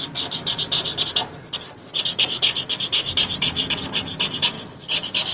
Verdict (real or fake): real